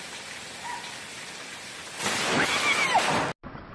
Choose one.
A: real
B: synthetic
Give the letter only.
A